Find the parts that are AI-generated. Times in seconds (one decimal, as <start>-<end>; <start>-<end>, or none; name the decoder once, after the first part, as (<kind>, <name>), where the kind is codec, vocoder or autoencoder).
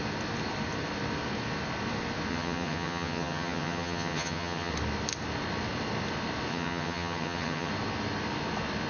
2.3-4.7 (vocoder, HiFi-GAN); 6.5-7.7